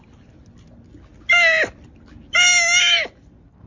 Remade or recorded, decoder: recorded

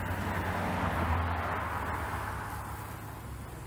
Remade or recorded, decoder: recorded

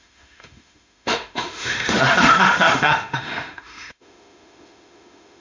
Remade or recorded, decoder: remade, autoencoder, DAC-VAE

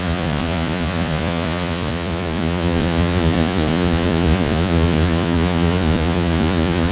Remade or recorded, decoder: remade, vocoder, Vocos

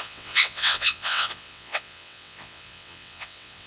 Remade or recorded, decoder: remade, vocoder, WaveNeXt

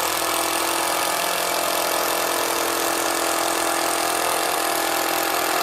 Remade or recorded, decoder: recorded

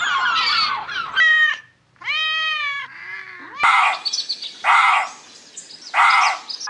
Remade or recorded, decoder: recorded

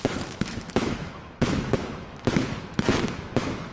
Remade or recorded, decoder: remade, autoencoder, DAC-VAE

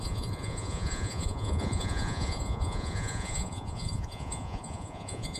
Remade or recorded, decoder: remade, vocoder, Vocos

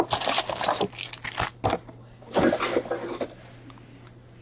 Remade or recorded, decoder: recorded